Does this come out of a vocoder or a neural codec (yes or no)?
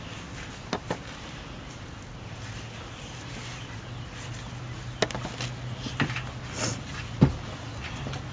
no